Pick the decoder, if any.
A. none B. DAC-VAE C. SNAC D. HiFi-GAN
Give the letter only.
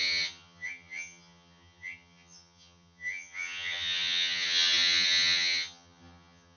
D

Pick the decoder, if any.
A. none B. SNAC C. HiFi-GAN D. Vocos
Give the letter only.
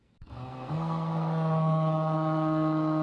B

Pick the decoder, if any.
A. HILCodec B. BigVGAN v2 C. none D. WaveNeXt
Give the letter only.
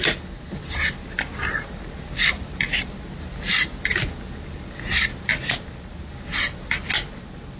C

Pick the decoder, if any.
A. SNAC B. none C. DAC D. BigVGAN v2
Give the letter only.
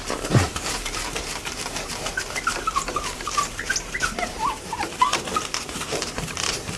D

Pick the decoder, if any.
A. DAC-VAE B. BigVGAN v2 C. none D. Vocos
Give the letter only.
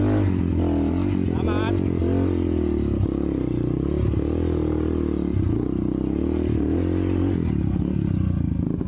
C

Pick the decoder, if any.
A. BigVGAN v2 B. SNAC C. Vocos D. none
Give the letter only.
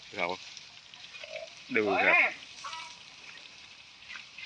A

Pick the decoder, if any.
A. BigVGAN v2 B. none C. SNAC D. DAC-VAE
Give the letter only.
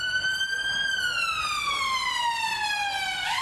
B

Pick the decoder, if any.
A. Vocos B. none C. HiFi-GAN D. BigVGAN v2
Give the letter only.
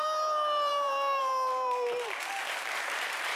D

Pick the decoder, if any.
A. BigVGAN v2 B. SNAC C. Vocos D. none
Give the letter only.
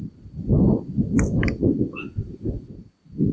D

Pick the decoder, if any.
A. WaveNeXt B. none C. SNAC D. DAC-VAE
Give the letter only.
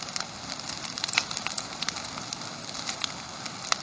B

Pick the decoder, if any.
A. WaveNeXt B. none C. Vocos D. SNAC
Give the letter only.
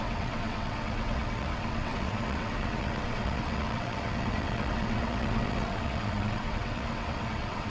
A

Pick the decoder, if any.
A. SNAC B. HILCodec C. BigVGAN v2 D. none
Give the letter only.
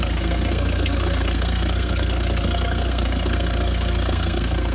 A